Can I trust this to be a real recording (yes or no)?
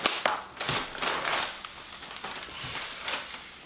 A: yes